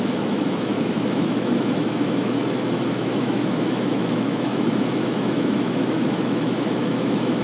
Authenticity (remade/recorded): remade